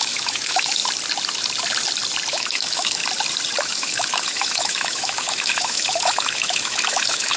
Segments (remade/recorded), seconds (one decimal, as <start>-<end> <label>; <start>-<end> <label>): 0.0-0.8 remade; 0.8-2.3 recorded; 2.3-3.0 remade; 3.0-3.6 recorded; 3.6-7.4 remade

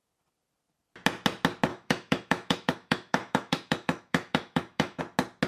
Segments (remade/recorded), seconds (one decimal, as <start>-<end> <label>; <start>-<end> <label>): 0.0-1.7 recorded; 1.7-5.0 remade; 5.0-5.5 recorded

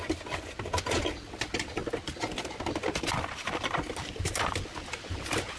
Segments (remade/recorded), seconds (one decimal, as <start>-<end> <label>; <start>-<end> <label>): 0.0-5.6 recorded

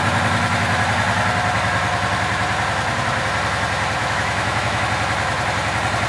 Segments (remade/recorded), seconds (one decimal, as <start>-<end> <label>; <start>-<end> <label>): 0.0-4.0 recorded; 4.0-4.8 remade; 4.8-6.1 recorded

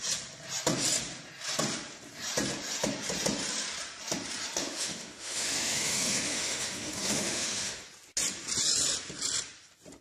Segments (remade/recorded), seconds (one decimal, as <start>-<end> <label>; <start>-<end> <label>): 0.0-4.6 recorded; 4.6-7.8 remade; 7.8-10.0 recorded

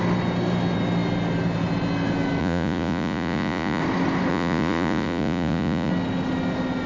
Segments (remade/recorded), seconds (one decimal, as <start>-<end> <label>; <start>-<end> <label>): 0.0-2.4 recorded; 2.4-3.8 remade; 3.8-4.3 recorded; 4.3-5.9 remade; 5.9-6.9 recorded

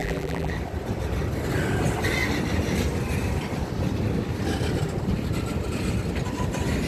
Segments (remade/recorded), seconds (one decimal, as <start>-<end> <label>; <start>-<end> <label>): 0.0-0.5 remade; 0.5-6.9 recorded